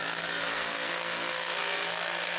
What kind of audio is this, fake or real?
fake